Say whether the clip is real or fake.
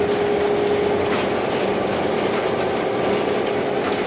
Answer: real